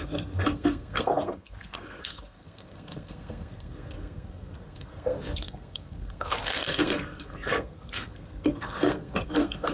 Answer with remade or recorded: remade